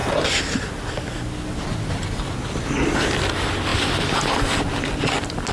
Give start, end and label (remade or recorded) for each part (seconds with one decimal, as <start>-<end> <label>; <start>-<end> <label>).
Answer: 0.0-5.5 recorded